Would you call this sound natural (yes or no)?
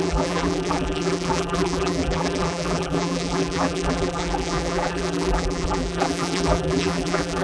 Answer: no